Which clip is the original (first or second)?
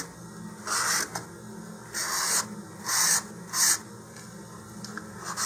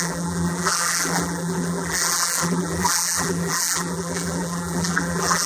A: first